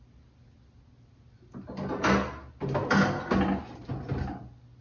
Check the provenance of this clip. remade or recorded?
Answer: recorded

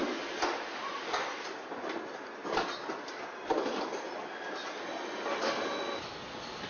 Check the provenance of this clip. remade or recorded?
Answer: recorded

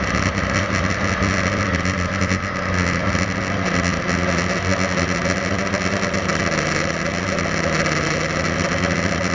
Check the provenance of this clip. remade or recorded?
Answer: recorded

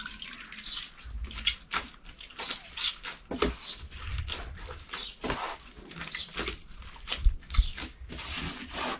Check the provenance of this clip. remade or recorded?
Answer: recorded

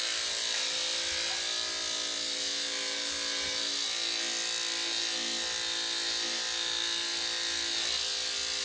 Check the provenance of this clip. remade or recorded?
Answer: recorded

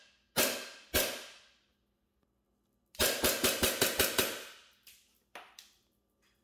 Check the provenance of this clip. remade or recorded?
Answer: recorded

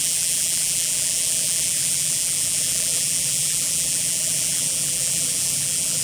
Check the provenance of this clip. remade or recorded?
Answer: remade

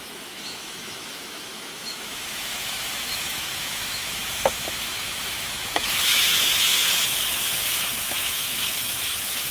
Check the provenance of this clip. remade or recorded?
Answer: remade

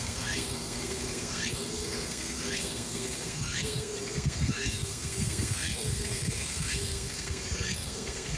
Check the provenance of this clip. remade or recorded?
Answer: remade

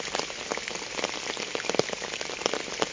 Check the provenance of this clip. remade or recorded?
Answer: recorded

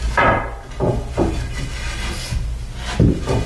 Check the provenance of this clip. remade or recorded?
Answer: recorded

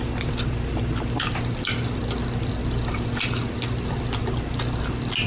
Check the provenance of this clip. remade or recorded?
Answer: recorded